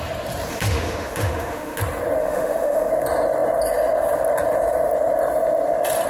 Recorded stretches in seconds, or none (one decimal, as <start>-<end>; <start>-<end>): 0.0-0.5; 1.8-2.2; 2.9-6.1

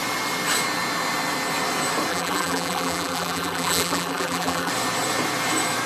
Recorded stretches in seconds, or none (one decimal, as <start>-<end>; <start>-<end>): 0.0-2.1; 4.7-5.9

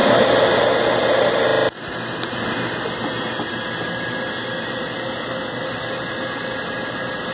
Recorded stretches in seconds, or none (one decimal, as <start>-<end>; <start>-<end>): 0.0-7.3

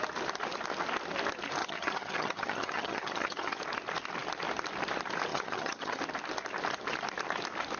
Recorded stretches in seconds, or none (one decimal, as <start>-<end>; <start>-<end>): 0.0-1.6; 3.6-5.3; 6.0-7.8

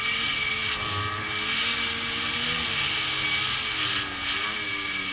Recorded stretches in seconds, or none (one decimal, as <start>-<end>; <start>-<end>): 0.0-5.1

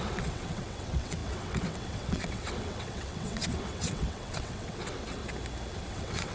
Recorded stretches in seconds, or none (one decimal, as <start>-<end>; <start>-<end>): 5.2-5.7

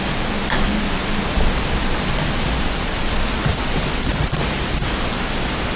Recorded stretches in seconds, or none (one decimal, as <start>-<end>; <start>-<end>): 0.0-5.8

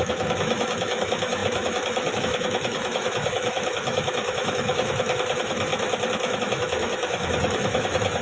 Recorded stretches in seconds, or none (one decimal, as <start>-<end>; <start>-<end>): 5.7-6.4